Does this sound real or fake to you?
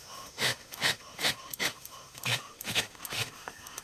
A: fake